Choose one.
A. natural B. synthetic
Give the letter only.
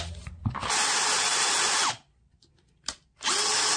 A